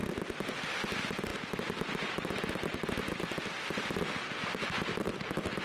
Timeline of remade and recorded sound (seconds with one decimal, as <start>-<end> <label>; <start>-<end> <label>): 0.0-1.3 recorded; 1.3-2.5 remade; 2.5-5.6 recorded